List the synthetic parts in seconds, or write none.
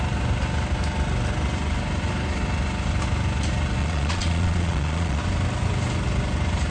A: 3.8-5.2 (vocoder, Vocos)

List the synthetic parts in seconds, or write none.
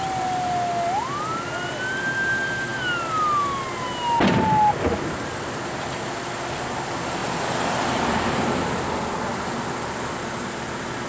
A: none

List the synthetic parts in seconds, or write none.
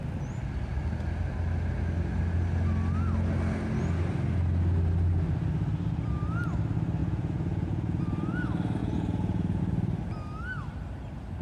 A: 7.0-8.0 (vocoder, Vocos); 8.8-9.6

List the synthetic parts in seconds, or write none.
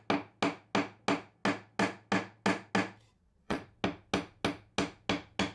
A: 3.1-3.7 (vocoder, Vocos)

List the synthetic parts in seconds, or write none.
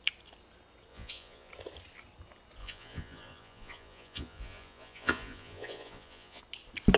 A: 0.9-1.5 (vocoder, Vocos); 2.6-6.4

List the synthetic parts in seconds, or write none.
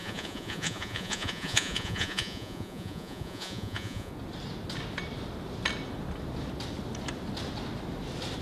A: 0.0-4.1 (vocoder, Vocos)